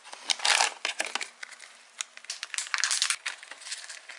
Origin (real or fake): real